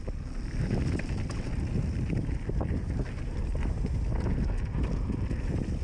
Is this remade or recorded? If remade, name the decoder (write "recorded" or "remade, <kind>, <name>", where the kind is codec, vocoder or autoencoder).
recorded